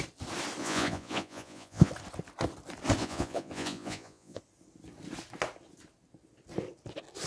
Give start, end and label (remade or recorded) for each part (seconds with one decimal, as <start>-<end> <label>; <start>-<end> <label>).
0.0-0.6 recorded; 0.6-1.9 remade; 1.9-3.0 recorded; 3.0-4.4 remade; 4.4-7.3 recorded